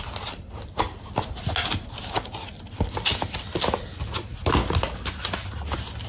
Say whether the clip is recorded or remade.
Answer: recorded